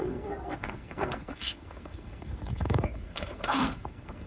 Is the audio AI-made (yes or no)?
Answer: yes